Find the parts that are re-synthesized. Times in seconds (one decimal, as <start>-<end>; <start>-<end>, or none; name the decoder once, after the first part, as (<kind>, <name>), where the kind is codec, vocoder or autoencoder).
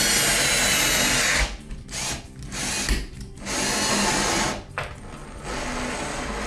none